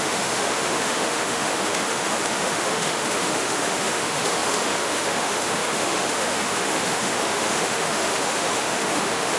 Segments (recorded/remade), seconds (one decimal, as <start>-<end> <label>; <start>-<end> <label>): 0.0-9.4 remade